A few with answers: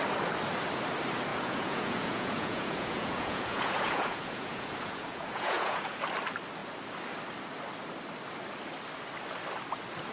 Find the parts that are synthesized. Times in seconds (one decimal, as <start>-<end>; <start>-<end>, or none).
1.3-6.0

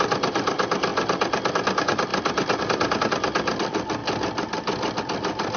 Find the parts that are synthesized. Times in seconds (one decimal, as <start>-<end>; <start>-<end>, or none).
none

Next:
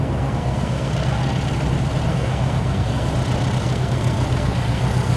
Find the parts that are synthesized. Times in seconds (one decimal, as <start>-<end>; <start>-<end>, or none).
0.0-1.2; 2.1-3.1; 3.6-5.2

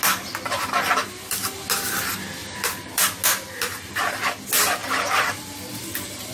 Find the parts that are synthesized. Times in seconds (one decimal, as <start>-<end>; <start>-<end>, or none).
2.4-3.2; 4.8-5.8